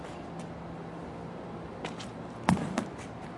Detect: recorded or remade recorded